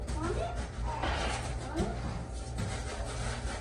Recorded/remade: recorded